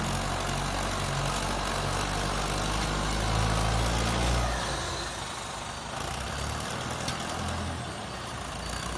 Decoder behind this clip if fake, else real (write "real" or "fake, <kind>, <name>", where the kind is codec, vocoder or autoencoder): real